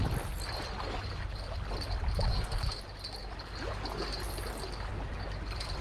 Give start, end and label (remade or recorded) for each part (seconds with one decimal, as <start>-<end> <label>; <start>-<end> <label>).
0.0-2.3 recorded; 2.3-2.8 remade; 2.8-5.8 recorded